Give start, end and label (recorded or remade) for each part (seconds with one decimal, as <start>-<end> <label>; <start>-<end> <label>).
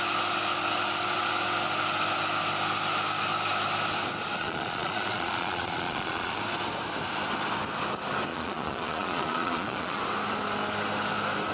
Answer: 0.0-4.4 recorded; 4.4-6.4 remade; 6.4-8.3 recorded; 8.3-10.0 remade; 10.0-11.5 recorded